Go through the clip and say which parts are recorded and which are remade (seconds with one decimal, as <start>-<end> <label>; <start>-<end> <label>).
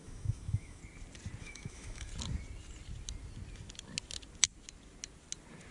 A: 0.0-0.8 remade; 0.8-1.4 recorded; 1.4-2.1 remade; 2.1-5.7 recorded